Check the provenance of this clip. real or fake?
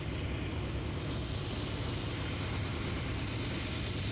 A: real